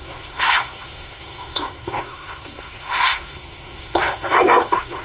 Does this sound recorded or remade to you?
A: remade